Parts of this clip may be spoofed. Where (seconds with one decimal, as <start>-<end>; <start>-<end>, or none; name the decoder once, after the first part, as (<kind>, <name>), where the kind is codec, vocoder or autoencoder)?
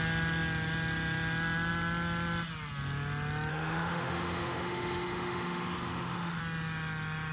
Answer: 3.5-6.4 (autoencoder, DAC-VAE)